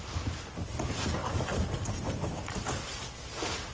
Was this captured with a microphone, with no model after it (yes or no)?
yes